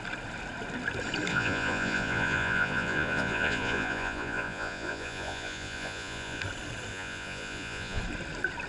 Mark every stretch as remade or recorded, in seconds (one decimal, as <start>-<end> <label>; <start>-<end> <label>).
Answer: 0.0-1.3 recorded; 1.3-6.4 remade; 6.4-6.9 recorded; 6.9-8.0 remade; 8.0-8.7 recorded